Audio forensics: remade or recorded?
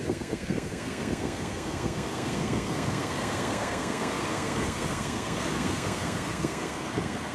remade